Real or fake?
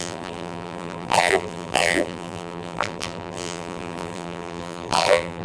fake